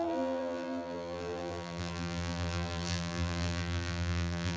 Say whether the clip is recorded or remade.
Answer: remade